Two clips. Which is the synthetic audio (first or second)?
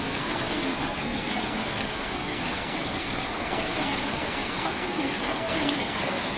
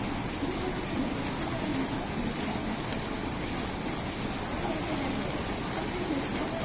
first